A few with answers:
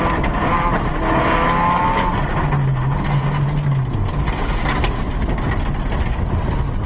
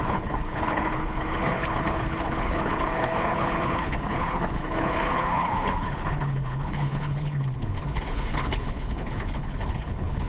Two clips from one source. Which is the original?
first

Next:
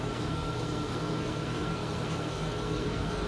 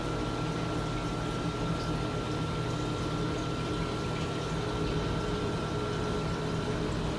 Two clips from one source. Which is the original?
second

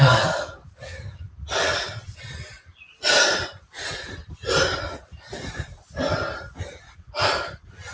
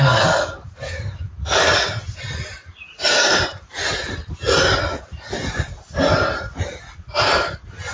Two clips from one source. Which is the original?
second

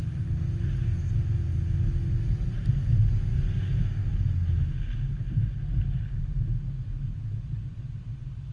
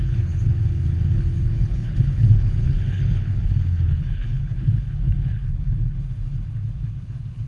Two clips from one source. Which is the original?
first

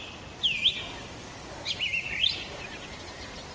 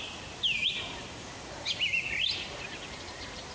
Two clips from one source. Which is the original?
first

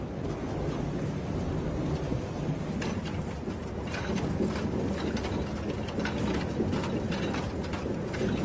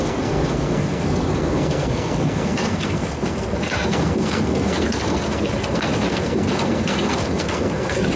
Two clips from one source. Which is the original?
first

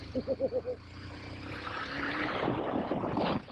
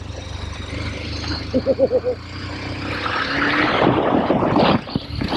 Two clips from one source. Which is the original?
second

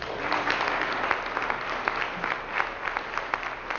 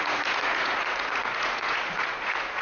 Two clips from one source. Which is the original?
first